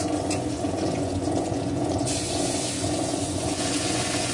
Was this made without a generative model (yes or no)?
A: no